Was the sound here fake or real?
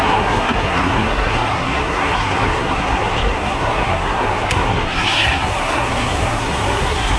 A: fake